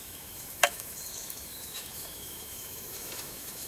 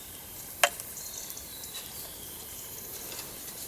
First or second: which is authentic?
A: second